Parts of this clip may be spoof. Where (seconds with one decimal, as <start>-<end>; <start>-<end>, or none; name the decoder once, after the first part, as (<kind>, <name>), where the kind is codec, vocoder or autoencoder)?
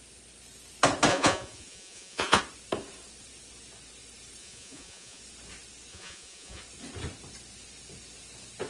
1.1-2.4 (vocoder, Vocos); 4.4-5.2; 5.9-6.6